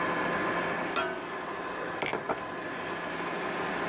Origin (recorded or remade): recorded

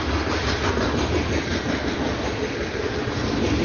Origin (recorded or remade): recorded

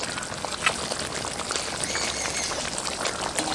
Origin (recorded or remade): recorded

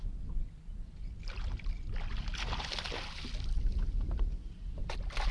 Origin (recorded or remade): recorded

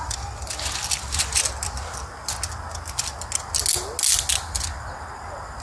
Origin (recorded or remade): recorded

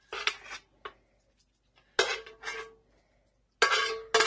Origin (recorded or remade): recorded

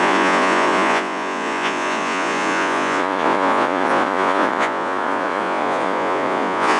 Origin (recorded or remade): remade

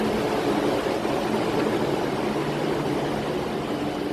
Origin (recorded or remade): recorded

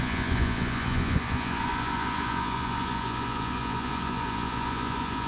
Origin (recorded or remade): remade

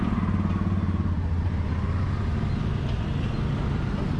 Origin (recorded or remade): recorded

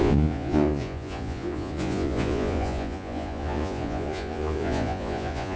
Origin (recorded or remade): remade